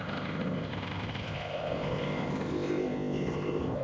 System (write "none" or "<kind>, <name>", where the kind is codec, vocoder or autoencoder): codec, ZipCodec